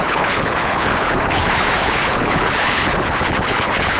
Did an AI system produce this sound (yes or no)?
yes